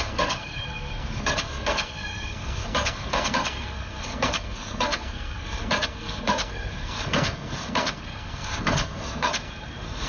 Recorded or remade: remade